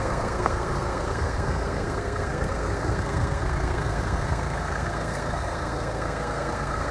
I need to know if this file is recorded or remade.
remade